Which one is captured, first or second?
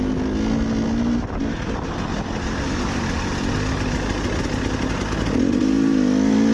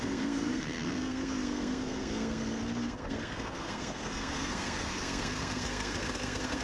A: first